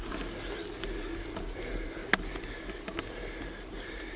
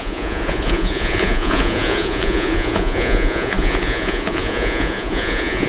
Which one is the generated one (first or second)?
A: second